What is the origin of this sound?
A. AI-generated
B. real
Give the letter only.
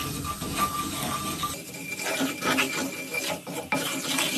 B